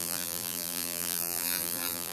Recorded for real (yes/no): no